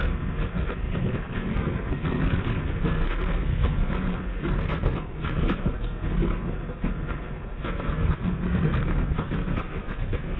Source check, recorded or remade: remade